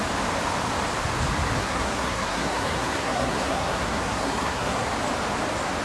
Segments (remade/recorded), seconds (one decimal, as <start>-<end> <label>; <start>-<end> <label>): 0.0-1.6 recorded; 1.6-4.9 remade; 4.9-5.8 recorded